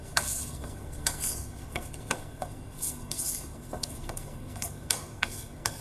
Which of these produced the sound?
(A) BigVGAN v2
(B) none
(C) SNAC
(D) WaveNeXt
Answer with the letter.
C